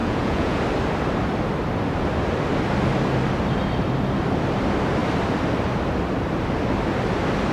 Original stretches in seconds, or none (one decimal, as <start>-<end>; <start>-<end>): 0.6-7.5